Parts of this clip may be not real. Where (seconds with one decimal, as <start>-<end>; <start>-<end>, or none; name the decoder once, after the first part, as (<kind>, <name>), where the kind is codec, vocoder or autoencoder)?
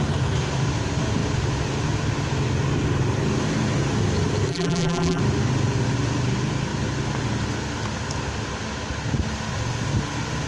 4.5-5.2 (vocoder, BigVGAN v2)